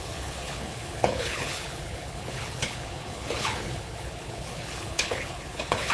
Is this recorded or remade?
remade